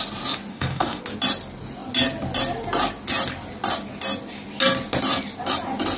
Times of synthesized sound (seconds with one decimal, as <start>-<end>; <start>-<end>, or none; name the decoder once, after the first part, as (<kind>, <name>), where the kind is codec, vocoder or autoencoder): 0.5-1.0 (autoencoder, DAC-VAE)